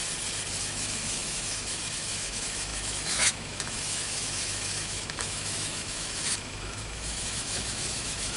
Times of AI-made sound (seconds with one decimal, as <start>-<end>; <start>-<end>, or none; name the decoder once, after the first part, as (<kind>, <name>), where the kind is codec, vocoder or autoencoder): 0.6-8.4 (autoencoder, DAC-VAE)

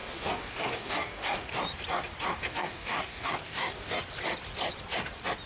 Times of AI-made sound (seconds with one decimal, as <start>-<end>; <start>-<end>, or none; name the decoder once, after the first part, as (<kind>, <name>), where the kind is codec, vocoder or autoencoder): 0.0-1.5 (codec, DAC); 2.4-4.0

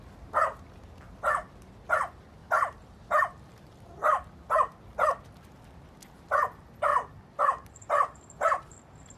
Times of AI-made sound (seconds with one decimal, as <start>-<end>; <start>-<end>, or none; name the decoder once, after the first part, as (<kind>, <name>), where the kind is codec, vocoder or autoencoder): none

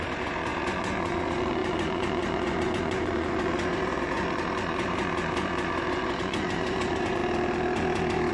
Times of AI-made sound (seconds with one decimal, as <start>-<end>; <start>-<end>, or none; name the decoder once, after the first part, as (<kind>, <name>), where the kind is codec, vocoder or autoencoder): 0.0-7.2 (vocoder, Vocos)

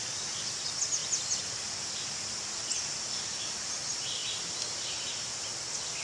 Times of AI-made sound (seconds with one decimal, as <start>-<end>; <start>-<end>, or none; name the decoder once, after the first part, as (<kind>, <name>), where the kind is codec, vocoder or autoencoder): none

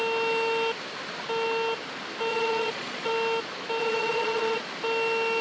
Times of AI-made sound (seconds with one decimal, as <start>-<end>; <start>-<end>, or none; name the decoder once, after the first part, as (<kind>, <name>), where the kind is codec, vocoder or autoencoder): 2.3-3.1 (vocoder, Vocos); 3.8-4.6